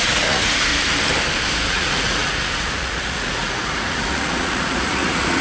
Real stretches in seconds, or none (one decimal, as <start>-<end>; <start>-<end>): 0.7-1.7